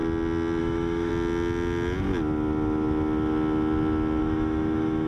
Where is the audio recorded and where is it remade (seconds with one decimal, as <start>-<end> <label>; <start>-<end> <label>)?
0.0-0.6 recorded; 0.6-1.1 remade; 1.1-4.2 recorded; 4.2-5.1 remade